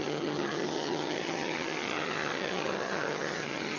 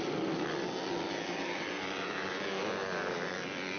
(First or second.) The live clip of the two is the second